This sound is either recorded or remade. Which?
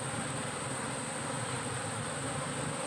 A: recorded